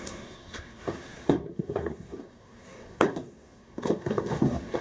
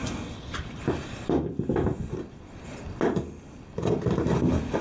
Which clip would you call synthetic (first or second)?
first